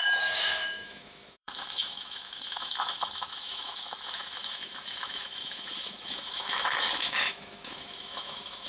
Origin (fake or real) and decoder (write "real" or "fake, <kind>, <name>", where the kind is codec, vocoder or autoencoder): fake, autoencoder, DAC-VAE